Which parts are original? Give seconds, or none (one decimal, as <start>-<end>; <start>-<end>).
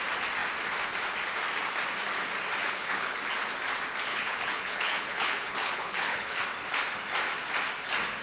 0.0-2.6; 3.2-4.1; 6.4-8.2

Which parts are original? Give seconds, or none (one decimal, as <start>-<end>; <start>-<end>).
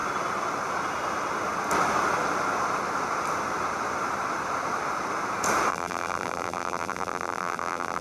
0.0-5.7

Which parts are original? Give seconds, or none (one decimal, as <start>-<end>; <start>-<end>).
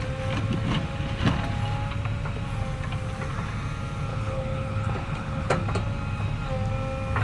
0.0-4.1; 5.5-7.2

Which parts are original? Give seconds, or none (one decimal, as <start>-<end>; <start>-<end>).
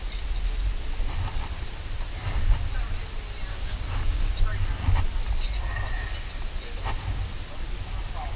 0.0-3.5; 4.4-8.4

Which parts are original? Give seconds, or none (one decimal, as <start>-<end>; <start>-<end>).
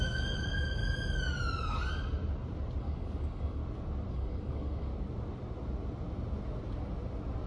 0.8-2.8; 3.6-4.1; 4.9-7.5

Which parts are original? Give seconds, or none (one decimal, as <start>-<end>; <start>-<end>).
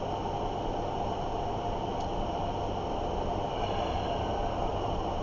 0.0-5.2